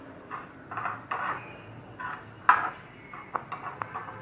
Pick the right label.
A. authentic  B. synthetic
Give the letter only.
A